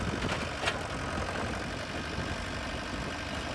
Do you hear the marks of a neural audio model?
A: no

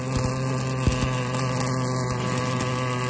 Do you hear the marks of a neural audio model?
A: no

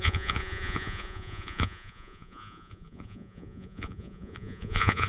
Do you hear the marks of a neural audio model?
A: yes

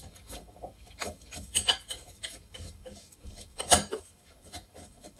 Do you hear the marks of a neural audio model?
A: yes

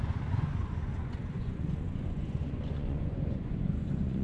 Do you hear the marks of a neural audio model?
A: yes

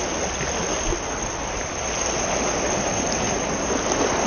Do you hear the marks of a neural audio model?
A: no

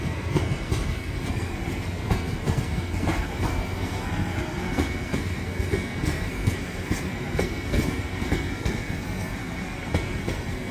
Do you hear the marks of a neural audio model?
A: yes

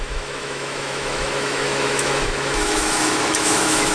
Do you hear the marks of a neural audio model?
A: yes